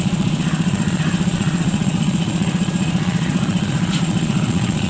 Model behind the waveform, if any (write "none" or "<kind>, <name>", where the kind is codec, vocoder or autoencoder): vocoder, Vocos